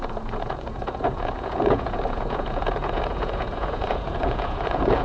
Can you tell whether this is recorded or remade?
remade